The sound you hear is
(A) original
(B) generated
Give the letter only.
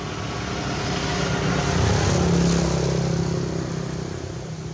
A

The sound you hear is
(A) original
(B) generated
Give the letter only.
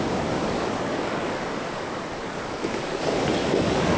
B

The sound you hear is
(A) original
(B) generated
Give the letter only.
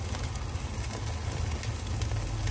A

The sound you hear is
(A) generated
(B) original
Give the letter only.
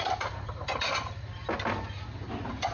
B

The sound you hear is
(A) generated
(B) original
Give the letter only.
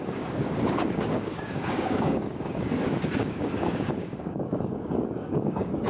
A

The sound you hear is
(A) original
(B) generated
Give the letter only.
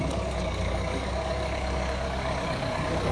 B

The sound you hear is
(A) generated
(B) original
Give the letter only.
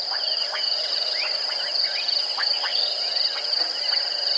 B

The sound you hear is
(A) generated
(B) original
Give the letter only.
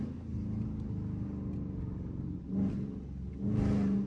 B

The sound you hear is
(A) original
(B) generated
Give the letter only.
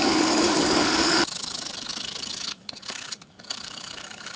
B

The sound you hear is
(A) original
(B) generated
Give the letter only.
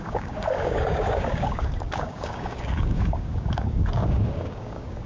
B